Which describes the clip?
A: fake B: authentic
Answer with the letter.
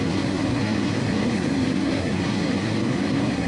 A